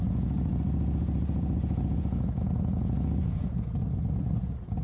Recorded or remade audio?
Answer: remade